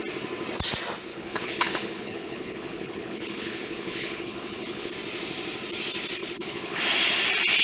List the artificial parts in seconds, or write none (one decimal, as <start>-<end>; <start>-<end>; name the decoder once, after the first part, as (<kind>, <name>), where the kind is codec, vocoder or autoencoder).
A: 1.1-4.9 (codec, HILCodec); 6.2-6.8